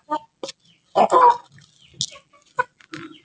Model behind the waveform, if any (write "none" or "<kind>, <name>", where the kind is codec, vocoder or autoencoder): none